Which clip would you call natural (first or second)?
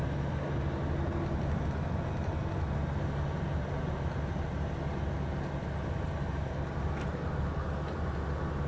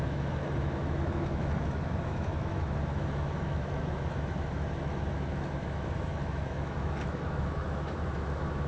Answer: first